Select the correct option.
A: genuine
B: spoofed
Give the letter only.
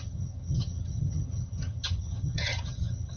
B